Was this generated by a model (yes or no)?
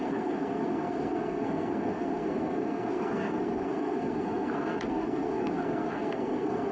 yes